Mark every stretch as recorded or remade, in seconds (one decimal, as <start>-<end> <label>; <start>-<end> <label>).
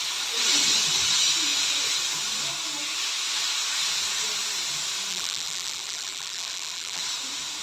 0.0-5.1 recorded; 5.1-7.0 remade; 7.0-7.6 recorded